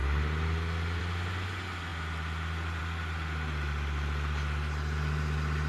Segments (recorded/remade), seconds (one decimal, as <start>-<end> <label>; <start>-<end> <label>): 0.0-5.7 recorded